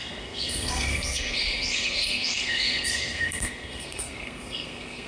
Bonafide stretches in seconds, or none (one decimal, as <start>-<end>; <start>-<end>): none